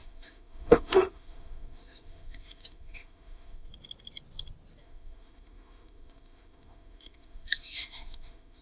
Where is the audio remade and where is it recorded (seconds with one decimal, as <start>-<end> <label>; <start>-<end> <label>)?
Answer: 0.0-3.7 remade; 3.7-4.8 recorded; 4.8-8.6 remade